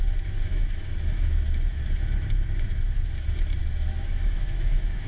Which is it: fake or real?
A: fake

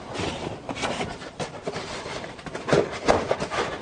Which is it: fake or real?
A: real